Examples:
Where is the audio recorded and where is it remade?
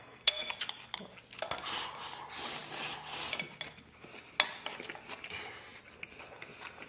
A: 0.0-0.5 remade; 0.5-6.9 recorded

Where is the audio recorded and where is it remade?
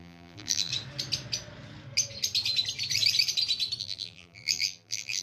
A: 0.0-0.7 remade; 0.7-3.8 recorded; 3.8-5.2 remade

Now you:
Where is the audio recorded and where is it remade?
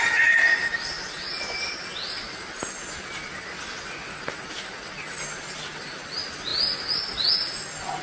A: 0.0-8.0 recorded